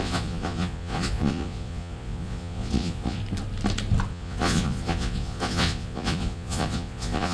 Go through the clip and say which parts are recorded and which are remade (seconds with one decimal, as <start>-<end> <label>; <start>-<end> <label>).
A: 0.0-3.2 remade; 3.2-4.1 recorded; 4.1-7.3 remade